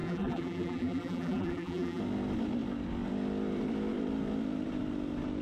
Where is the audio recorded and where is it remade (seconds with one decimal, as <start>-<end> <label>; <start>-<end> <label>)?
0.0-2.0 remade; 2.0-5.4 recorded

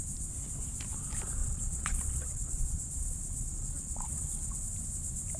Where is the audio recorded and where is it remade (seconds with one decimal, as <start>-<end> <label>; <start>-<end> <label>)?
0.0-1.4 recorded; 1.4-4.6 remade; 4.6-5.4 recorded

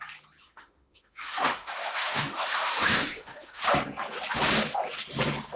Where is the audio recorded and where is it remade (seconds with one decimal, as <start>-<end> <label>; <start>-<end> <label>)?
0.0-0.4 recorded; 0.4-3.6 remade; 3.6-5.6 recorded

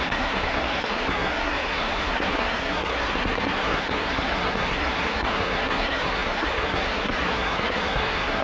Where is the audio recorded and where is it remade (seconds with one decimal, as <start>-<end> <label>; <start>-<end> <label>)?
0.0-8.4 remade

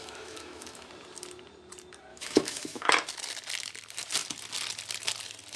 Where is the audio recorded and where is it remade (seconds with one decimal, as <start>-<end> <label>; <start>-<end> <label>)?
0.0-0.9 remade; 0.9-2.1 recorded; 2.1-2.9 remade; 2.9-5.6 recorded